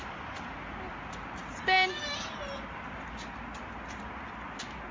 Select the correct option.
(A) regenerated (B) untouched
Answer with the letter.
B